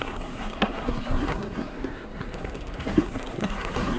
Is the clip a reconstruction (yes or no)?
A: yes